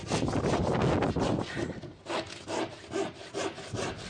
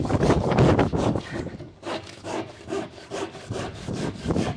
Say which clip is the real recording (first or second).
first